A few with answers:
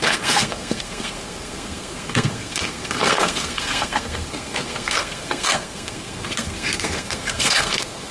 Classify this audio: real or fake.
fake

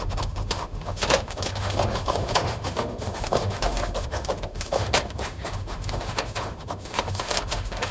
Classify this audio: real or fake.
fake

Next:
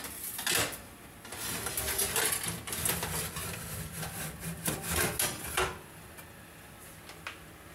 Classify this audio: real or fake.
real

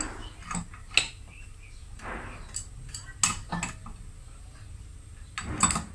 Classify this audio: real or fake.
real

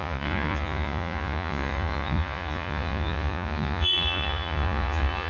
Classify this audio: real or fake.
fake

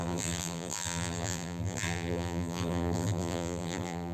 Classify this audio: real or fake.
fake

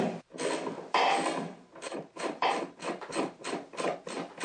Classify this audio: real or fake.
real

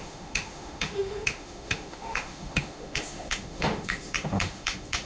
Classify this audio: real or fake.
fake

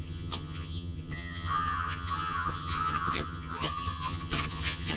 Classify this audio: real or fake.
fake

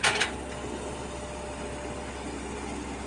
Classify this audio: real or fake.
real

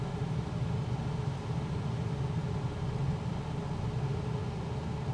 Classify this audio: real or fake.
real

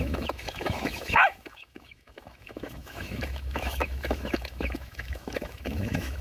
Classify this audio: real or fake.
fake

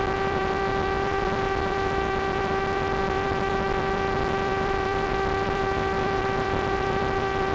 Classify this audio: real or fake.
fake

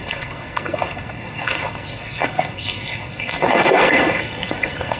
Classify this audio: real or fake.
fake